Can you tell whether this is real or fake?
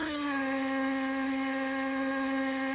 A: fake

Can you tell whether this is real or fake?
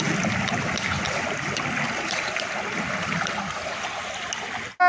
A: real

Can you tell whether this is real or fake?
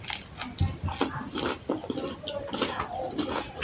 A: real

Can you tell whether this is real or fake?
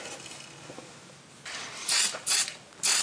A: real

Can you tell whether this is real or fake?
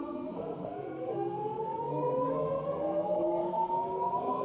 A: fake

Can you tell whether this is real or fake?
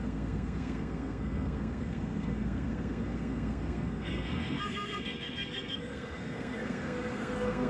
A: fake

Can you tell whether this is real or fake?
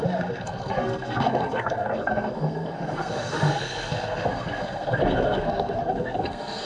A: fake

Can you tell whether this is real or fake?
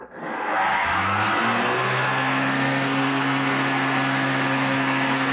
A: fake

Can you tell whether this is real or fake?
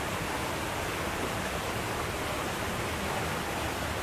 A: real